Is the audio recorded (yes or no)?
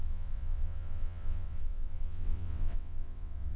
no